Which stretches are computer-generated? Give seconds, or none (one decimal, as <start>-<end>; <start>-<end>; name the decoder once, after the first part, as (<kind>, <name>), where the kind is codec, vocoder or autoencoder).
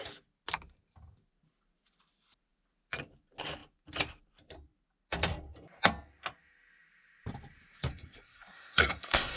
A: 7.9-9.4 (codec, SNAC)